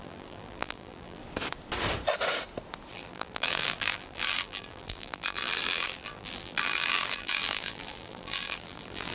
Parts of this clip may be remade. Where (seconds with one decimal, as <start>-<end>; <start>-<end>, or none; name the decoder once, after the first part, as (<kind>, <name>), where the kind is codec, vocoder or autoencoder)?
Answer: 0.0-1.2 (vocoder, BigVGAN v2); 2.9-9.1